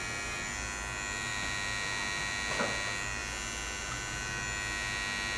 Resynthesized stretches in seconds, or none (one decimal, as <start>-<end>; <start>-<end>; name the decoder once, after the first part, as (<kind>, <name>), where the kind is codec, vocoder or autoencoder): none